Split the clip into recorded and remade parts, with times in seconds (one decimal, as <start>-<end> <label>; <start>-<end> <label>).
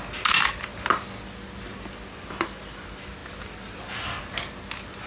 0.0-5.1 recorded